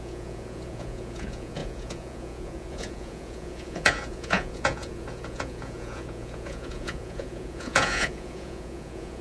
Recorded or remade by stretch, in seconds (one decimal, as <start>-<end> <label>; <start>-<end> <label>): 0.0-9.2 remade